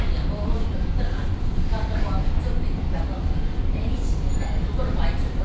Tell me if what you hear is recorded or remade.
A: recorded